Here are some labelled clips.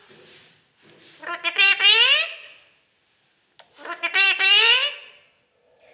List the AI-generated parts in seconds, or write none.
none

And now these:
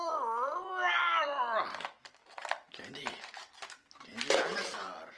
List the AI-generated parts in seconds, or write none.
0.0-2.2 (vocoder, BigVGAN v2); 4.4-5.2

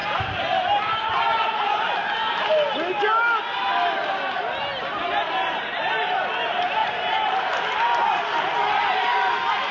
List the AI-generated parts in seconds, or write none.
6.8-7.6 (vocoder, BigVGAN v2)